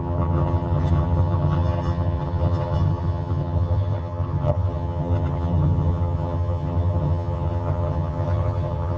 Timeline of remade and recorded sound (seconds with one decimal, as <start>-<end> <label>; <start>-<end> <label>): 0.0-9.0 remade